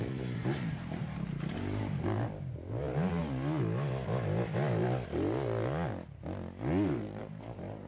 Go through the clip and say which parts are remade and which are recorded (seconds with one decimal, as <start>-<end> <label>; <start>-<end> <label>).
0.0-3.2 remade; 3.2-7.2 recorded; 7.2-7.9 remade